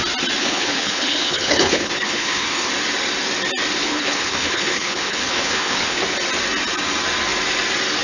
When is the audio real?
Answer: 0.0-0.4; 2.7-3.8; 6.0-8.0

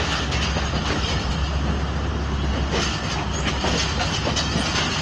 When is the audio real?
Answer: 0.0-5.0

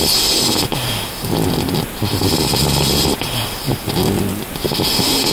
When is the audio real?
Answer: 0.0-5.3

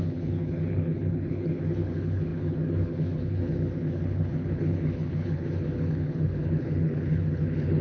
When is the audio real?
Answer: none

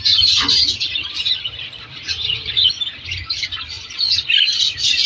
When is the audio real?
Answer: 0.0-2.1; 2.7-5.1

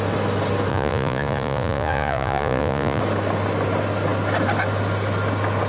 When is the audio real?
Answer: 0.0-0.7; 3.0-5.7

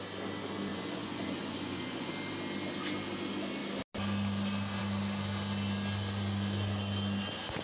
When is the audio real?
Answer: 0.0-0.7; 2.1-7.6